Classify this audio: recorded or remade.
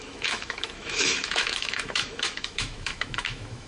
remade